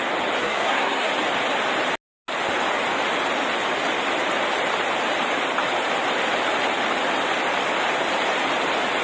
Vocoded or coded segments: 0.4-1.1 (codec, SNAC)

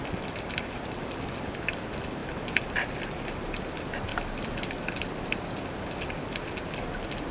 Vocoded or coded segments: none

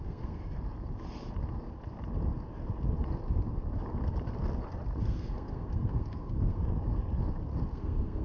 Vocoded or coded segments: 0.0-0.4 (codec, SNAC); 5.0-6.6; 7.7-8.2

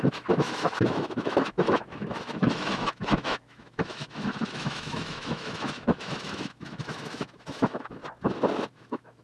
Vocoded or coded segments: 0.0-8.0 (autoencoder, DAC-VAE); 8.7-9.2

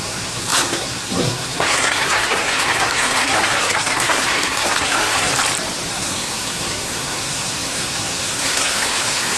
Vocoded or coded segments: 0.0-5.3 (codec, SNAC); 5.9-9.4